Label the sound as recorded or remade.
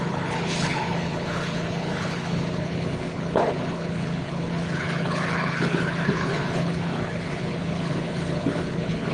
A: remade